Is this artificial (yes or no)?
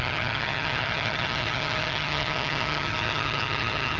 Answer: yes